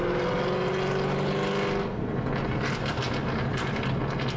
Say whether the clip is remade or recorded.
recorded